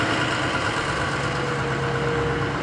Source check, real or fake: real